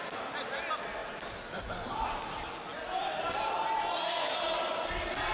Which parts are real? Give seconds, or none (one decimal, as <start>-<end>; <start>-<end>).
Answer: 0.0-5.3